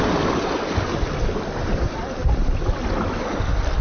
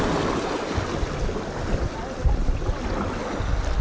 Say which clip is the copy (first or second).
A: first